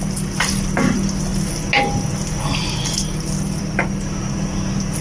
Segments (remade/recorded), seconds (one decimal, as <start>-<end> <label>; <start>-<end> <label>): 0.0-5.0 recorded